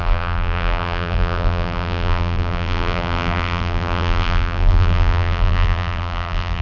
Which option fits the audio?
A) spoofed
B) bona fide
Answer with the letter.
A